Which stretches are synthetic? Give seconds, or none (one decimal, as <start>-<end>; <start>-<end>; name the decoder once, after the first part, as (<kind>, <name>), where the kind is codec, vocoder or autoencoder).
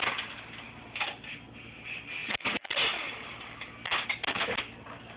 none